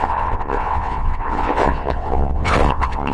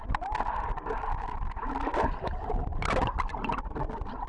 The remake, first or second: first